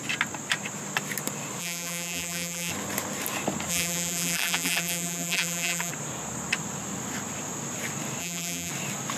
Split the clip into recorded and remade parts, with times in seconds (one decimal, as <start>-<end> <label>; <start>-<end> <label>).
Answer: 0.0-1.6 recorded; 1.6-2.7 remade; 2.7-3.7 recorded; 3.7-5.9 remade; 5.9-8.2 recorded; 8.2-8.7 remade; 8.7-9.2 recorded